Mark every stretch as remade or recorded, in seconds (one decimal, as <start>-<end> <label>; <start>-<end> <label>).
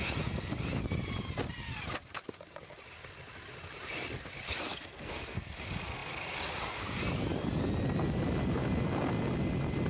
0.0-4.7 recorded; 4.7-5.6 remade; 5.6-9.9 recorded